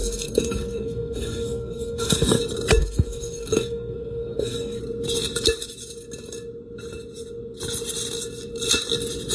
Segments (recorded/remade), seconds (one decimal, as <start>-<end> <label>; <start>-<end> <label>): 0.0-2.4 remade; 2.4-2.8 recorded; 2.8-4.8 remade; 4.8-9.3 recorded